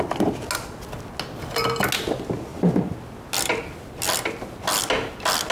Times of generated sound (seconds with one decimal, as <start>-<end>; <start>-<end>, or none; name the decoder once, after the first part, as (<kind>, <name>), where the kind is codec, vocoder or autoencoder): none